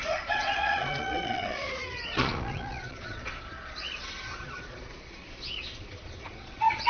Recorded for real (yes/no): no